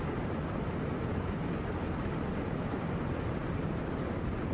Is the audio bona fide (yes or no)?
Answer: no